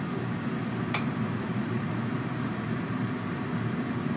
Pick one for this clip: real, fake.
fake